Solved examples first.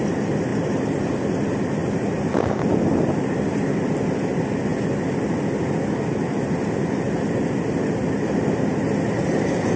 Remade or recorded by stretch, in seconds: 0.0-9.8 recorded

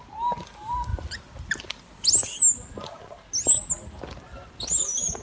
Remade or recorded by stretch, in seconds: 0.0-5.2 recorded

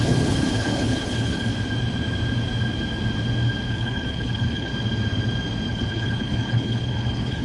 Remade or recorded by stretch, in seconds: 0.0-1.5 remade; 1.5-3.7 recorded; 3.7-4.7 remade; 4.7-5.7 recorded; 5.7-7.4 remade

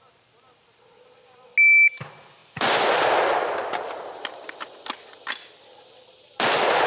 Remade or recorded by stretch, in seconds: 0.0-6.9 recorded

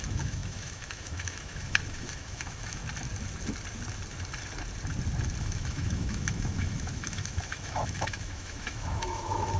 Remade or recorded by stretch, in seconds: 0.0-2.8 remade; 2.8-5.4 recorded; 5.4-9.6 remade